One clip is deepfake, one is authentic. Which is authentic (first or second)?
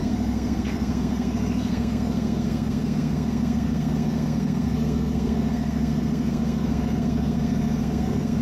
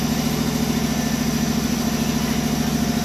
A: second